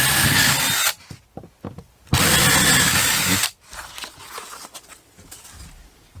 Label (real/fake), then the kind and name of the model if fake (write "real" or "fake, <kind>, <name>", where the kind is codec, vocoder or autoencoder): real